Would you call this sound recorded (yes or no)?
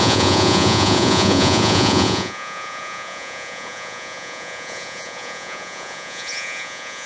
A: no